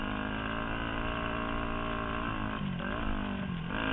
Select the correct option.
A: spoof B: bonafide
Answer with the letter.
B